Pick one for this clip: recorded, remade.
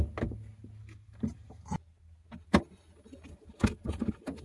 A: recorded